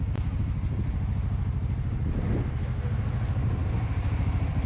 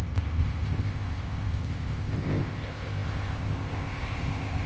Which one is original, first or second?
first